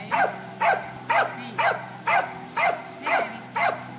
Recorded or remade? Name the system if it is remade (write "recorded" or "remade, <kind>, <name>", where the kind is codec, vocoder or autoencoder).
recorded